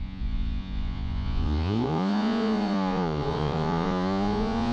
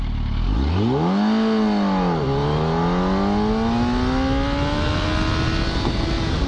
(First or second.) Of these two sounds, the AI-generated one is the first